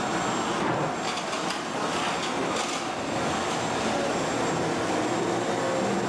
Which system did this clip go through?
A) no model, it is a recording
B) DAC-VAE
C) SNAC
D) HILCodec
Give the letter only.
A